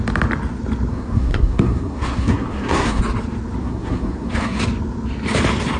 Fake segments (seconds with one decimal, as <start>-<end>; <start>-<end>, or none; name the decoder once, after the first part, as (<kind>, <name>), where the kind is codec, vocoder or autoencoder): 0.9-3.0 (codec, SNAC); 3.6-4.6

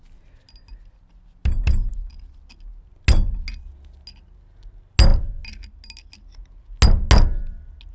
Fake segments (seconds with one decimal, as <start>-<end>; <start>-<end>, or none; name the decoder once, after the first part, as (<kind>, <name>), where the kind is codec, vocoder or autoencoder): none

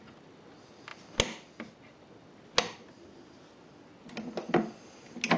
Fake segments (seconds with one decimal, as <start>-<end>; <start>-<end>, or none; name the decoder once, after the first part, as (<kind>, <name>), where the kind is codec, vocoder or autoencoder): none

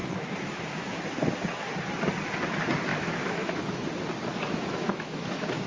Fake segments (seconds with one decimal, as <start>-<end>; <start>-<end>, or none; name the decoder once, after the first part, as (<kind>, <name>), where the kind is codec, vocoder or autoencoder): 0.0-1.0 (autoencoder, DAC-VAE); 2.9-3.8; 4.3-5.7

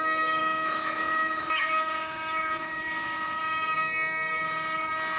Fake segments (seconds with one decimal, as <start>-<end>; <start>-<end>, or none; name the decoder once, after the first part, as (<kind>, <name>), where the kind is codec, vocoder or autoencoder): 0.4-3.4 (autoencoder, DAC-VAE)

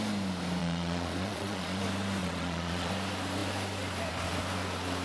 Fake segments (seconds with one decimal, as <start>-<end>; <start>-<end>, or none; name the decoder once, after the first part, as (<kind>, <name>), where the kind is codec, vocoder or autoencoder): 0.6-1.8 (vocoder, Vocos); 2.2-2.9

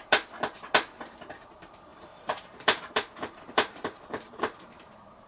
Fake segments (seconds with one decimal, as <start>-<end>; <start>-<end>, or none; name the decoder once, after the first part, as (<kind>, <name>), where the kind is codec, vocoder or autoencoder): 1.9-5.3 (vocoder, BigVGAN v2)

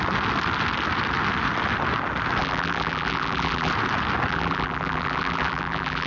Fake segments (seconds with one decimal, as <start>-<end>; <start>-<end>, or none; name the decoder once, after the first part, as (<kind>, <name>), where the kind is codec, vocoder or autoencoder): 2.4-3.7 (vocoder, BigVGAN v2); 4.3-6.1